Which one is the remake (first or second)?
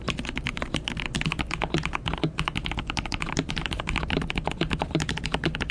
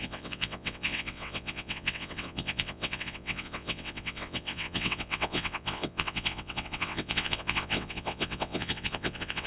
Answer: second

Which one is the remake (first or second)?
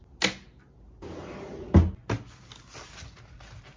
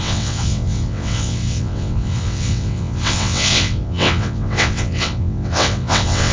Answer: second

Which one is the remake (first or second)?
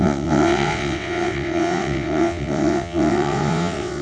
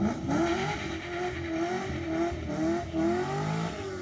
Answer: first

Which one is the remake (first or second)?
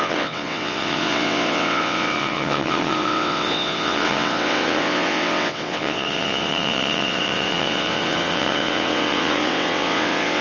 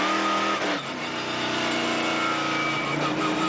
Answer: first